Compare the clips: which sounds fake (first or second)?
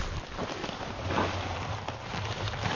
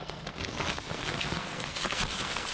second